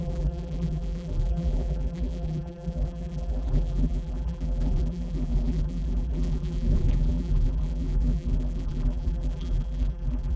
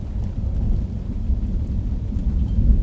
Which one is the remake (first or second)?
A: first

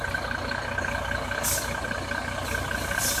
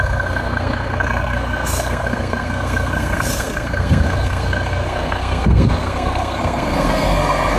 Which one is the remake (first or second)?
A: second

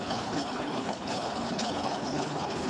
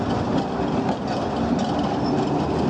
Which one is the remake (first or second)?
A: first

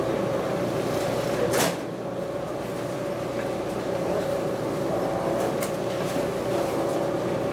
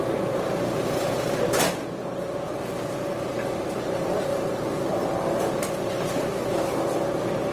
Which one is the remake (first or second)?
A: second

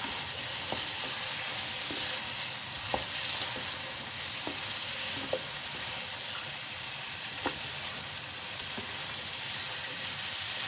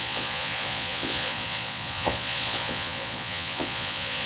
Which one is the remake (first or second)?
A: second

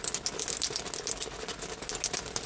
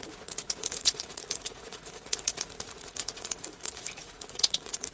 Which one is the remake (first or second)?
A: second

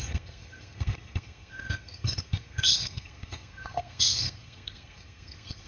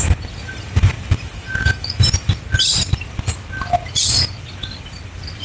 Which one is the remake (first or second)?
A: first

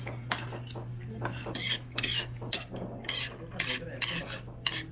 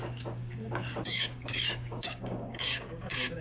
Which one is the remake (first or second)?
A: second